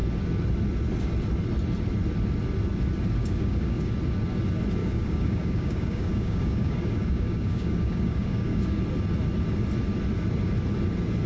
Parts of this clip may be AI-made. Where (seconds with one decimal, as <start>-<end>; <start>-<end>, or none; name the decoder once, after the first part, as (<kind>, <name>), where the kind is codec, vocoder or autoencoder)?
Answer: 3.2-3.9 (codec, DAC); 4.8-8.8